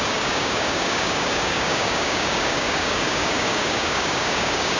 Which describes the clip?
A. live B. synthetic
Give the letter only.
B